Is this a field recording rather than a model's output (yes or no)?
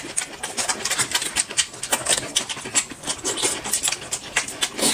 yes